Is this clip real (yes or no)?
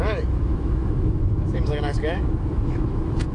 no